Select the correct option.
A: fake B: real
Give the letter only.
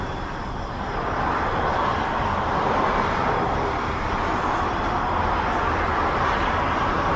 A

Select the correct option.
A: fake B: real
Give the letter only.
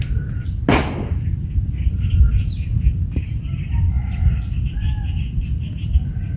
B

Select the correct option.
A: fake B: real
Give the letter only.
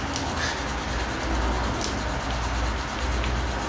B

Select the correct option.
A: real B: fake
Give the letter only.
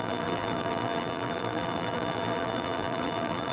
B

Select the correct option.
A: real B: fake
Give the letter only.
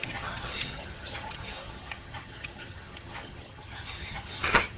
B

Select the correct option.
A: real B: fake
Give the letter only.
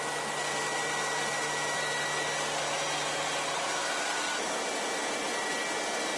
A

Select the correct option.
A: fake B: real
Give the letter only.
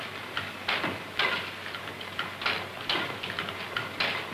B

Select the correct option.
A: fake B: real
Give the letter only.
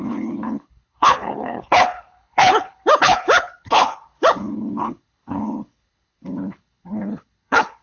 A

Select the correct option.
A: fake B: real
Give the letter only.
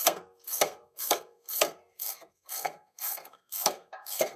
A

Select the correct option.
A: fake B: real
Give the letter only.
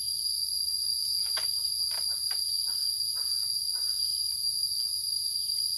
B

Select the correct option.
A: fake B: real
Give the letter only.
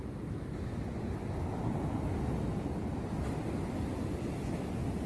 B